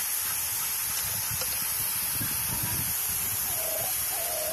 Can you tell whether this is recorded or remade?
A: recorded